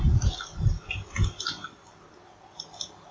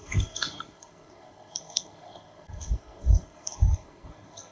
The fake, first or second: second